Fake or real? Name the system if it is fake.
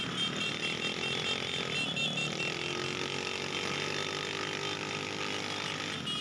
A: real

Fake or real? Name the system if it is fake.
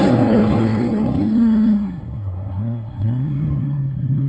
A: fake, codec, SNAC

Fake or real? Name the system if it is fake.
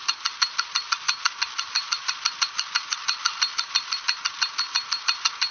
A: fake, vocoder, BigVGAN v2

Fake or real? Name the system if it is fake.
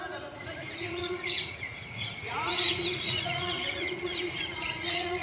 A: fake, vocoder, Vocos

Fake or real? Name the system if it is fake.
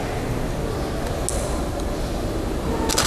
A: real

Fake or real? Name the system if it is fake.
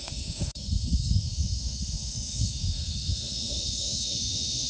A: fake, autoencoder, DAC-VAE